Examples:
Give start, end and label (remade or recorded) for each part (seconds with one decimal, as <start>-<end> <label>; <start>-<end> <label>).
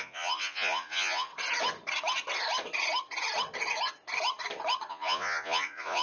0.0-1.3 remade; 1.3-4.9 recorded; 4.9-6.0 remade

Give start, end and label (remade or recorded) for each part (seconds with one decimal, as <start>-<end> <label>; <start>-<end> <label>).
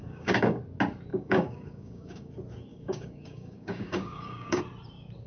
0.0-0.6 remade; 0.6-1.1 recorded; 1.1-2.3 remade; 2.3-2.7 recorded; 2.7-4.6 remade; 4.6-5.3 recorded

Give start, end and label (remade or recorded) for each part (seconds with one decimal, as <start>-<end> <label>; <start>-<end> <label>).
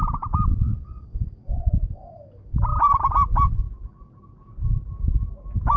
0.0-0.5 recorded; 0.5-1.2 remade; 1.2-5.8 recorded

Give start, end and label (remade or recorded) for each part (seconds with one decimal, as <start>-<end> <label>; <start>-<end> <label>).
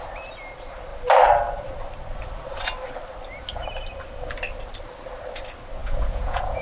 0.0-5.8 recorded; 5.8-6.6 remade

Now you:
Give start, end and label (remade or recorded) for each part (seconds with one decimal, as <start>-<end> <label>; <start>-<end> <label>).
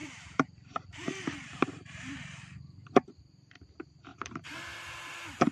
0.0-2.4 remade; 2.4-4.1 recorded; 4.1-4.8 remade; 4.8-5.5 recorded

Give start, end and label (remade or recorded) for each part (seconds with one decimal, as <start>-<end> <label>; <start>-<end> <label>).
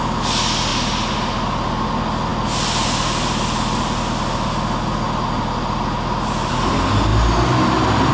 0.0-8.1 recorded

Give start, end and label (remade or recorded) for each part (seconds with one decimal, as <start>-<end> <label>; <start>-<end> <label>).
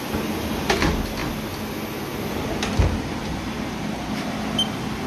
0.0-5.1 recorded